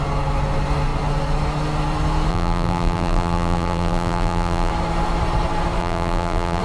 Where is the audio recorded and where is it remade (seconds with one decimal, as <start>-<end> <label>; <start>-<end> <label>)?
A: 0.0-2.3 recorded; 2.3-4.7 remade; 4.7-5.8 recorded; 5.8-6.6 remade